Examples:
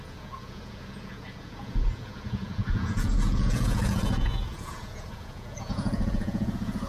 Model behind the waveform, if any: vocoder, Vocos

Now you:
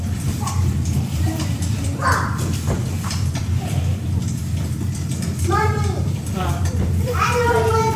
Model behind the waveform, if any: vocoder, BigVGAN v2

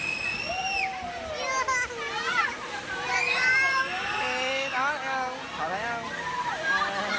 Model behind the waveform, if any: none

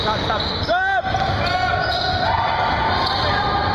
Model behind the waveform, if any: none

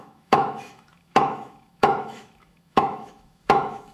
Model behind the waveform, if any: autoencoder, DAC-VAE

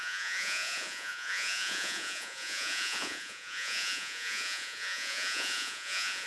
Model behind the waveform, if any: vocoder, Vocos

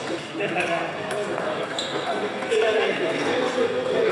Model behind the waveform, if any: codec, SNAC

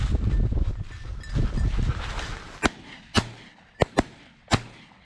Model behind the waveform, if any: none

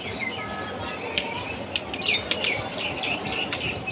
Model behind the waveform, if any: none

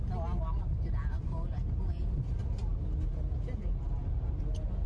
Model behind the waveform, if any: none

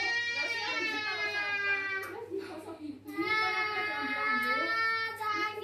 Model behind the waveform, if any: none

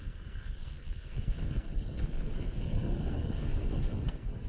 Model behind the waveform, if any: codec, SNAC